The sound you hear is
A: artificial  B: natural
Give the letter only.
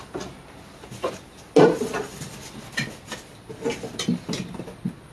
B